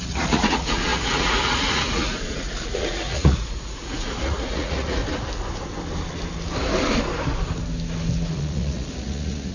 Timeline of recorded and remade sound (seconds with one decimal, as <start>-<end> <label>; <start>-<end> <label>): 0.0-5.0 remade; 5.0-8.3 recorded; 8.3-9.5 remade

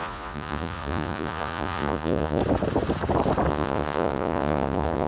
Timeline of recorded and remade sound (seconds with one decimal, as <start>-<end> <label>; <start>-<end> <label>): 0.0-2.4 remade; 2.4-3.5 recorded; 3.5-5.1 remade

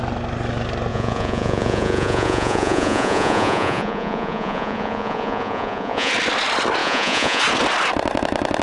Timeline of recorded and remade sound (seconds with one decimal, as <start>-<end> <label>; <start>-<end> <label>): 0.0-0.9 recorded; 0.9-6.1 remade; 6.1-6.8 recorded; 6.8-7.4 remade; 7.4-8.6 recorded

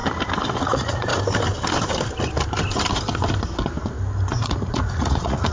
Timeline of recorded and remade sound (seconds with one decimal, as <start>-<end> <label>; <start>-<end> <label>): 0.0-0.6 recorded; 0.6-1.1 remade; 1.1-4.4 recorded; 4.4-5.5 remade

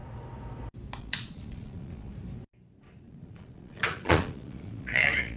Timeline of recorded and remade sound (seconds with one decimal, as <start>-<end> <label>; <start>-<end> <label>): 0.0-1.0 recorded; 1.0-2.1 remade; 2.1-3.0 recorded; 3.0-5.4 remade